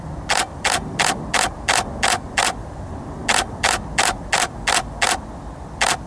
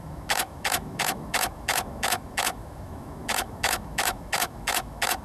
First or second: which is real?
first